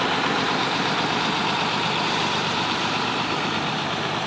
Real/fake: fake